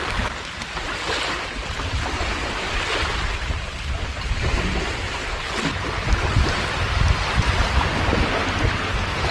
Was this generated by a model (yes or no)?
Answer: no